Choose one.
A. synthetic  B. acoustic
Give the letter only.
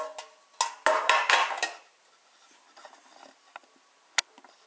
B